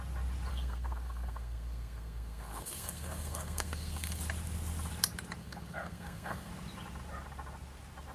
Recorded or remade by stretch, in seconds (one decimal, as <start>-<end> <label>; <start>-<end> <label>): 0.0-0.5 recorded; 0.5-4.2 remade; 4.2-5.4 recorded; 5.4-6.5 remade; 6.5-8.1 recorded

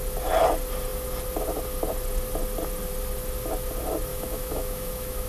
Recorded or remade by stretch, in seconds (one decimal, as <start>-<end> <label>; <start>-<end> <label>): 0.0-4.1 recorded; 4.1-5.3 remade

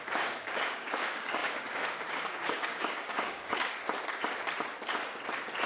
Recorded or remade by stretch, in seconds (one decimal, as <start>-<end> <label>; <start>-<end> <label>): 0.0-3.8 remade; 3.8-5.7 recorded